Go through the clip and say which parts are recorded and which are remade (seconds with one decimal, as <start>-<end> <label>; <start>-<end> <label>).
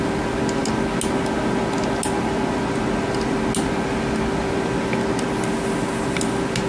0.0-6.7 recorded